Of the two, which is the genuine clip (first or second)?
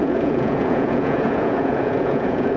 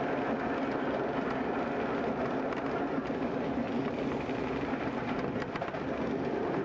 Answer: second